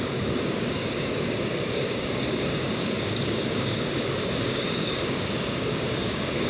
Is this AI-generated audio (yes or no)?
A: yes